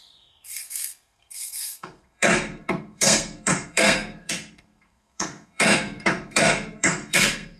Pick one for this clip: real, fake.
fake